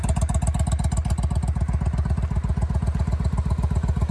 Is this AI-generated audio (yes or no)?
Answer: no